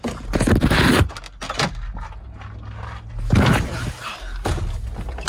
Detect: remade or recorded recorded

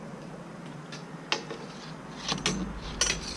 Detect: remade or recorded recorded